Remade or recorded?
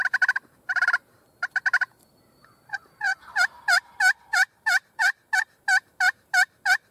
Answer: remade